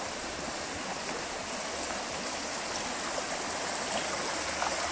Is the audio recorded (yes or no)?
yes